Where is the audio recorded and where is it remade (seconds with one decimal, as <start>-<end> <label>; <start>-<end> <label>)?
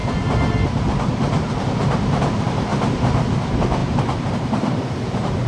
0.0-2.2 recorded; 2.2-2.7 remade; 2.7-3.4 recorded; 3.4-5.5 remade